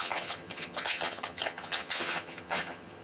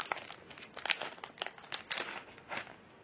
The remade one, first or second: first